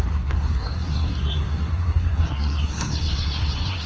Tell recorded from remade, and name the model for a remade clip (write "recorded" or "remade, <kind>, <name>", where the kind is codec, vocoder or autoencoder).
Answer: remade, codec, SNAC